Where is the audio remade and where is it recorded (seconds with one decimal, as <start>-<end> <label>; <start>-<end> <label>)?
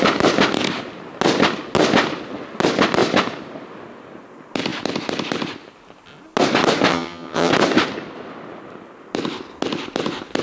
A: 0.0-6.9 recorded; 6.9-7.5 remade; 7.5-10.4 recorded